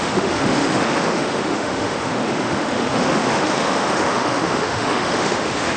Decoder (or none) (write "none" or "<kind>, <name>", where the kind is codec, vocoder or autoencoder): autoencoder, DAC-VAE